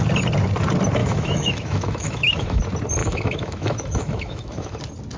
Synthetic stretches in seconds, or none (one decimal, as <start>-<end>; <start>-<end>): 1.0-2.6; 3.0-4.8